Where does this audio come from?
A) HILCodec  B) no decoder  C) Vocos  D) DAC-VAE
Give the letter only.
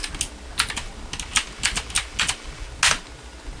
B